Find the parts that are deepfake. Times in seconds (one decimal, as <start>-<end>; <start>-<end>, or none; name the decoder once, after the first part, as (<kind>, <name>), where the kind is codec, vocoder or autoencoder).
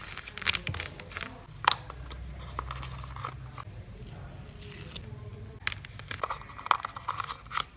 none